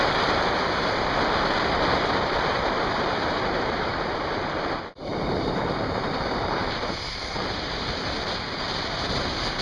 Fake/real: fake